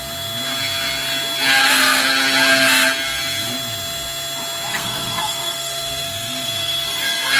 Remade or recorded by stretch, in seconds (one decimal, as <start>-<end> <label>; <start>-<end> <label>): 0.0-4.7 recorded; 4.7-7.4 remade